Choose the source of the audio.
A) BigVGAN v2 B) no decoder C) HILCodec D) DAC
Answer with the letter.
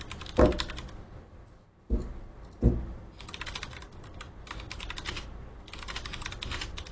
B